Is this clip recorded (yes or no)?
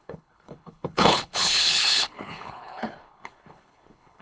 no